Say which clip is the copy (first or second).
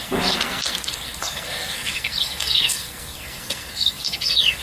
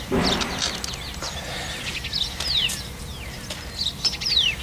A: first